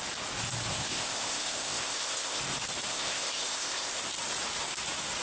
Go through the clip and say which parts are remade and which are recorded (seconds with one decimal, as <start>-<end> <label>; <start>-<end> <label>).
0.0-0.7 recorded; 0.7-2.4 remade; 2.4-2.9 recorded; 2.9-4.0 remade; 4.0-5.2 recorded